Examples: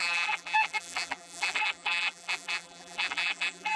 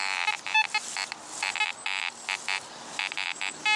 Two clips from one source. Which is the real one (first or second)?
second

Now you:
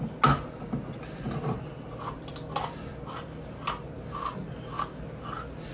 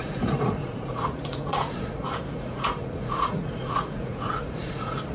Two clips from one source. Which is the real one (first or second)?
first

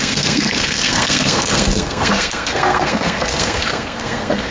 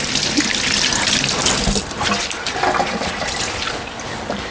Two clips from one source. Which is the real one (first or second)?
second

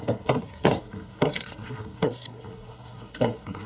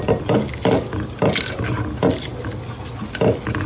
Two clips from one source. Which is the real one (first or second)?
second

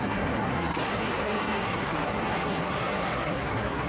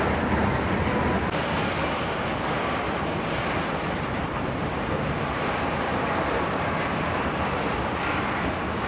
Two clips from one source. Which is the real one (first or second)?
second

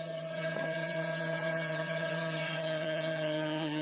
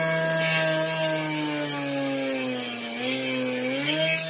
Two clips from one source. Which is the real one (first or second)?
second